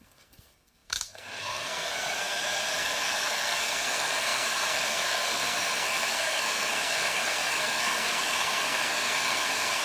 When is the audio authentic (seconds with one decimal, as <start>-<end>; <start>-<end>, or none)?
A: none